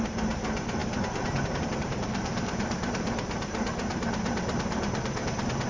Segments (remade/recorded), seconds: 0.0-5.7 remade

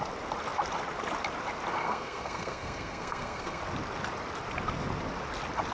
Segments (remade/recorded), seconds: 0.0-1.8 recorded; 1.8-3.6 remade; 3.6-5.7 recorded

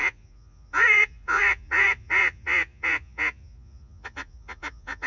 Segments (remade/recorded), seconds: 0.0-5.1 remade